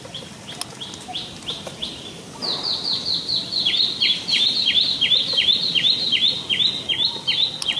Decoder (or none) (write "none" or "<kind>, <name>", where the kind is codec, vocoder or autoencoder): none